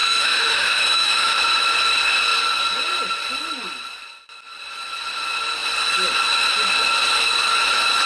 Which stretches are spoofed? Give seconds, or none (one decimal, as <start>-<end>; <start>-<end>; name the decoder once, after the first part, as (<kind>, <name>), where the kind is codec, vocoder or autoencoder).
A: 0.0-1.4 (autoencoder, DAC-VAE)